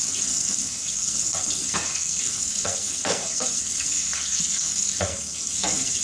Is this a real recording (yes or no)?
no